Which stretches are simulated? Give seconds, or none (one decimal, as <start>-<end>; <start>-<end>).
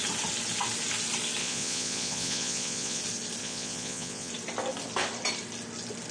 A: 1.4-3.0; 3.4-4.3